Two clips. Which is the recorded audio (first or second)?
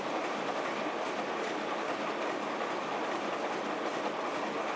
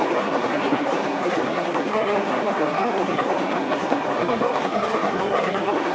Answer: first